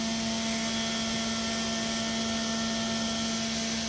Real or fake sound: real